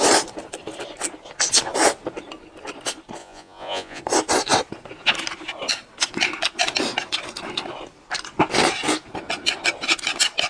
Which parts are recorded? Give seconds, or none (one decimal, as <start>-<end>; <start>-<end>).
0.0-3.2; 4.0-10.5